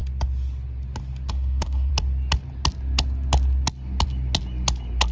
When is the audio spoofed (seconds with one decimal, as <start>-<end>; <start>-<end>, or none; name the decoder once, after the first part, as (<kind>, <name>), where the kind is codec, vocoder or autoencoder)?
1.3-1.9 (autoencoder, DAC-VAE)